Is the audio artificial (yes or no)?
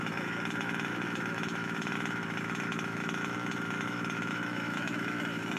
yes